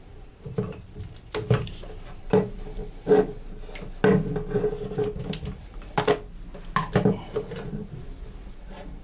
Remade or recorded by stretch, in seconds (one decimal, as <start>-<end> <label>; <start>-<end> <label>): 0.0-2.8 remade; 2.8-7.7 recorded; 7.7-9.0 remade

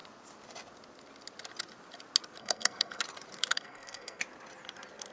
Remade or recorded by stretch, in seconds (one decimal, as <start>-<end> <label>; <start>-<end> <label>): 0.0-2.4 recorded; 2.4-3.0 remade; 3.0-3.5 recorded; 3.5-4.2 remade; 4.2-5.1 recorded

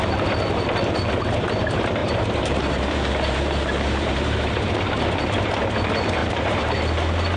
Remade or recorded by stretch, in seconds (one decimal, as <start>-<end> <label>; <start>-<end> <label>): 0.0-2.0 recorded; 2.0-4.7 remade; 4.7-6.2 recorded; 6.2-6.8 remade; 6.8-7.4 recorded

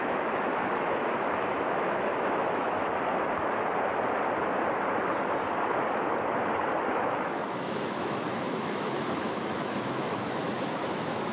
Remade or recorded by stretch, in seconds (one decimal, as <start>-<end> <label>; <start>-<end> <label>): 0.0-2.8 remade; 2.8-6.9 recorded; 6.9-11.3 remade

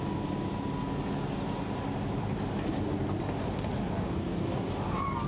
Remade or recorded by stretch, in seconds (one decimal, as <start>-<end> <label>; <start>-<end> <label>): 0.0-4.2 recorded; 4.2-4.7 remade; 4.7-5.3 recorded

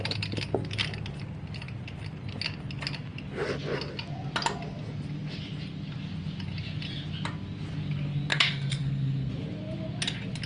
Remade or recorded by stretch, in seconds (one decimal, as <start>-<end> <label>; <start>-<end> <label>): 0.0-8.3 recorded; 8.3-9.3 remade; 9.3-10.5 recorded